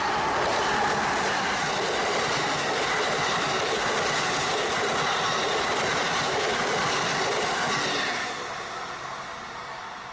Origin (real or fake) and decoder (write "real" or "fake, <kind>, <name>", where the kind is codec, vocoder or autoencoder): real